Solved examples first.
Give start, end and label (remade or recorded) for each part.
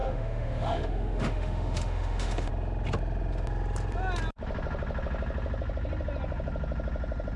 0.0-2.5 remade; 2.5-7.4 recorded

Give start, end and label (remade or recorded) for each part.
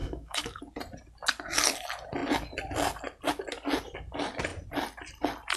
0.0-0.6 remade; 0.6-5.6 recorded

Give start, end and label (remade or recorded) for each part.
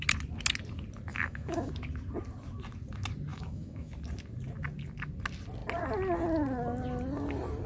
0.0-1.1 recorded; 1.1-1.7 remade; 1.7-3.3 recorded; 3.3-3.9 remade; 3.9-7.7 recorded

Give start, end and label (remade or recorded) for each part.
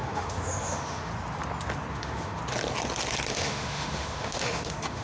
0.0-1.1 remade; 1.1-1.9 recorded; 1.9-2.4 remade; 2.4-3.3 recorded; 3.3-5.0 remade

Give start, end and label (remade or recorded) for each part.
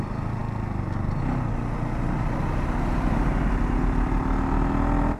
0.0-5.2 recorded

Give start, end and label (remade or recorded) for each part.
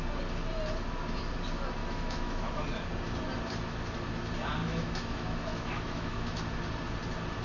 0.0-1.8 recorded; 1.8-2.6 remade; 2.6-4.6 recorded; 4.6-6.4 remade; 6.4-7.4 recorded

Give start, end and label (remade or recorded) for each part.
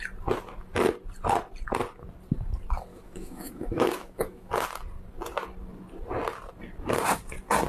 0.0-2.9 recorded; 2.9-4.5 remade; 4.5-7.7 recorded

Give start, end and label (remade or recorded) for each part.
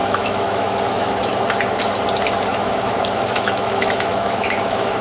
0.0-1.3 remade; 1.3-2.5 recorded; 2.5-5.0 remade